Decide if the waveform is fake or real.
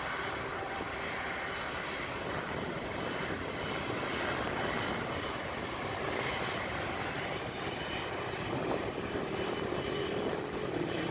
real